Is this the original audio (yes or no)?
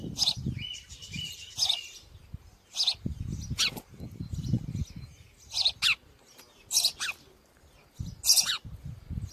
yes